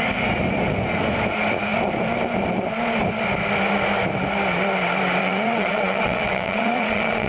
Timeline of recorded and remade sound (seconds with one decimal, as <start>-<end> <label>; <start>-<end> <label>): 0.0-5.2 recorded; 5.2-7.3 remade